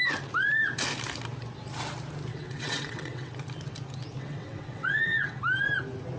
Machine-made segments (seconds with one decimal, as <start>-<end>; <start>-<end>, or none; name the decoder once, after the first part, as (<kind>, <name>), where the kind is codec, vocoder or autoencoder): 2.3-3.3 (vocoder, WaveNeXt); 4.2-5.4